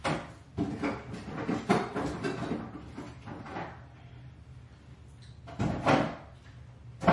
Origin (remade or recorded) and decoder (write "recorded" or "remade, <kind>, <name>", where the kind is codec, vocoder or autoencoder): recorded